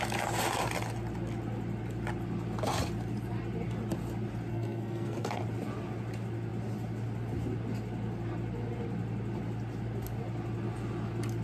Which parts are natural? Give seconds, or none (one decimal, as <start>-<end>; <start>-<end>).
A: 0.0-4.5; 5.4-11.4